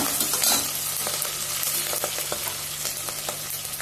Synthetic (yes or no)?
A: no